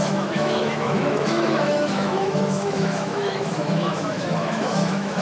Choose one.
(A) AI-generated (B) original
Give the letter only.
A